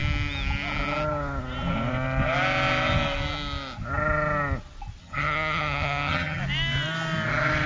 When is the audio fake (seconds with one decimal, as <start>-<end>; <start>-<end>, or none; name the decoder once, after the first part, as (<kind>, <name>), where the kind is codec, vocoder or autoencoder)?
5.0-6.4 (vocoder, HiFi-GAN)